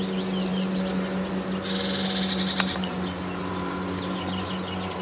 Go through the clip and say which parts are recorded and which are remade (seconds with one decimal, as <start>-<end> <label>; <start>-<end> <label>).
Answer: 0.0-5.0 recorded